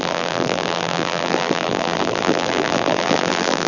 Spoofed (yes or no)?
yes